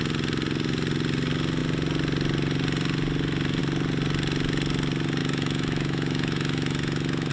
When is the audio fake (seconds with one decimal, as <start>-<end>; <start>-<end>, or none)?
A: 5.2-7.3